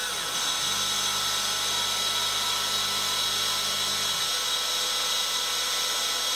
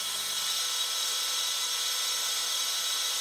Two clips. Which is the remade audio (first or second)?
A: second